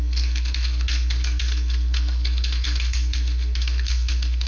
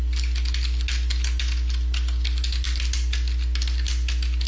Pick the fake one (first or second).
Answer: first